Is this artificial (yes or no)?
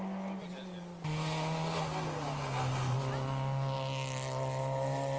no